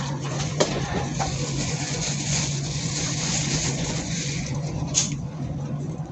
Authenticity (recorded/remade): remade